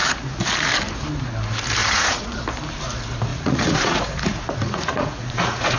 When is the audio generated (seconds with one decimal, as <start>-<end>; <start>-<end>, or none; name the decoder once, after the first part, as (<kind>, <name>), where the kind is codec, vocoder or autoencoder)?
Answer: 1.8-2.4 (vocoder, Vocos); 3.3-5.8